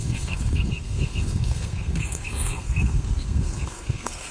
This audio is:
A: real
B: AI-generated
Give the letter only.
B